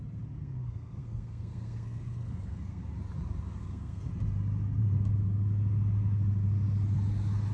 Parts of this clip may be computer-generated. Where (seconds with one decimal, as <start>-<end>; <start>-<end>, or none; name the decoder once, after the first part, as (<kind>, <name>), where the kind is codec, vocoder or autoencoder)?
0.4-2.8 (codec, SNAC); 3.6-4.1

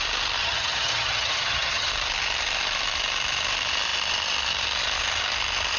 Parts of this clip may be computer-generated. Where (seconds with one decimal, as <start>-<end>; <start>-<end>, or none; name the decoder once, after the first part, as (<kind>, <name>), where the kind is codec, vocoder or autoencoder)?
0.4-1.9 (vocoder, HiFi-GAN)

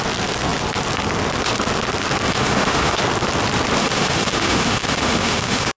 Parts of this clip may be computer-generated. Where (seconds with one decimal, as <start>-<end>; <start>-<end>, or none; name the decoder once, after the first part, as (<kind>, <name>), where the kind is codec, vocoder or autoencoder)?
2.3-3.0 (autoencoder, DAC-VAE); 3.8-5.8

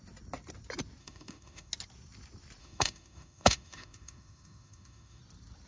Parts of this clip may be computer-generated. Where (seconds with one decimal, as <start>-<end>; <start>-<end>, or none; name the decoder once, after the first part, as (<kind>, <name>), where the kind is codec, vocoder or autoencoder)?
1.0-1.7 (autoencoder, DAC-VAE); 2.6-5.2

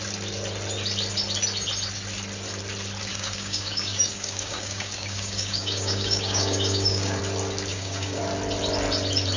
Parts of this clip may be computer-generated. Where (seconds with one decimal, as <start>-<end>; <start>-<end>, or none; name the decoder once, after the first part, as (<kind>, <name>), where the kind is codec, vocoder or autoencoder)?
3.1-7.2 (codec, DAC); 7.7-8.2

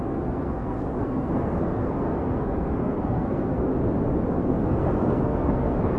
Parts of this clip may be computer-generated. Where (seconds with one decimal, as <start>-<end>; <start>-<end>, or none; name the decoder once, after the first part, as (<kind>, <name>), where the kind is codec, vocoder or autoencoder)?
0.0-3.7 (codec, SNAC); 4.3-6.0